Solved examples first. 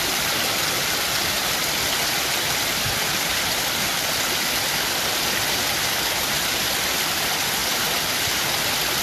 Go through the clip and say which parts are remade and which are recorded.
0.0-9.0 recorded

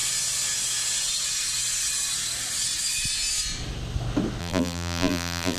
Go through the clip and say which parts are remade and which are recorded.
0.0-4.4 recorded; 4.4-5.6 remade